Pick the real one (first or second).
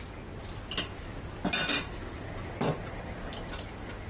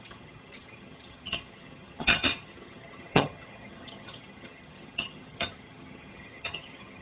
first